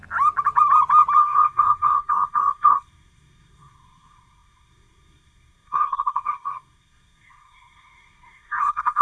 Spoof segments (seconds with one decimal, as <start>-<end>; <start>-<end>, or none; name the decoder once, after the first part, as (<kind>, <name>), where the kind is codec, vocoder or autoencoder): 1.2-9.0 (codec, SNAC)